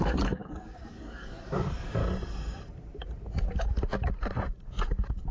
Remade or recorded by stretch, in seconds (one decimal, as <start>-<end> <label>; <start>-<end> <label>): 0.0-2.0 remade; 2.0-5.3 recorded